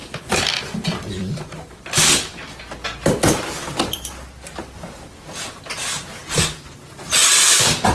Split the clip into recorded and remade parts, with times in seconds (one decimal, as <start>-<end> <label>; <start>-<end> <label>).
0.0-2.6 remade; 2.6-7.9 recorded